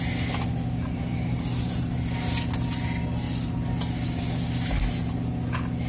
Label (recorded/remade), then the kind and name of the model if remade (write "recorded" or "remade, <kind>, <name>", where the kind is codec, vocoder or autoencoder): recorded